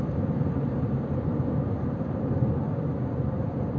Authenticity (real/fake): fake